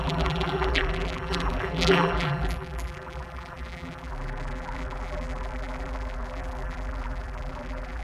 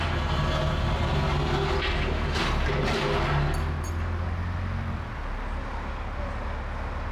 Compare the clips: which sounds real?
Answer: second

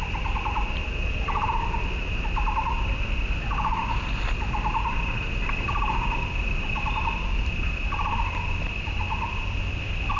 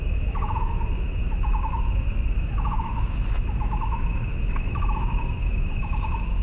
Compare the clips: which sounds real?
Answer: first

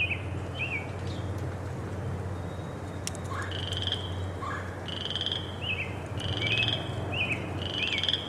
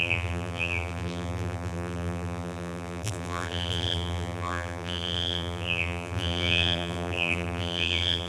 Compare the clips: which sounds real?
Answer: first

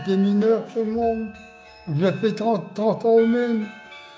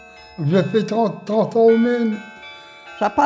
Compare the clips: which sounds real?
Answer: second